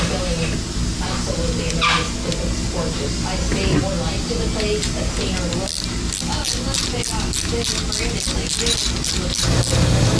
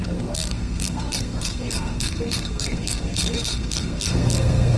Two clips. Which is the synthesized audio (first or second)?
second